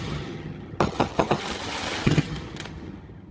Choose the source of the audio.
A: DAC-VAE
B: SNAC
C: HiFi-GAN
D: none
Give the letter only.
C